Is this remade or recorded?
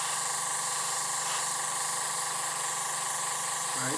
recorded